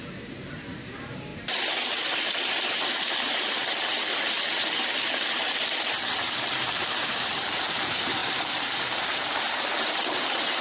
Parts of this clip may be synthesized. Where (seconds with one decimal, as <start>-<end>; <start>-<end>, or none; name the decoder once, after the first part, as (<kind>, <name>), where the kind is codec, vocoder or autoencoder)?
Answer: 0.0-1.3 (vocoder, BigVGAN v2); 2.1-3.6; 6.8-10.6